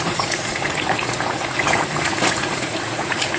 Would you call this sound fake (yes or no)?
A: yes